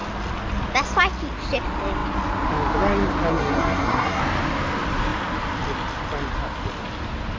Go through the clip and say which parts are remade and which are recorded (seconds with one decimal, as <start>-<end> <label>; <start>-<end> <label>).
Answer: 0.0-3.3 recorded; 3.3-4.2 remade; 4.2-7.4 recorded